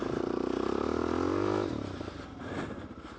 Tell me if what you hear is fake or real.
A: real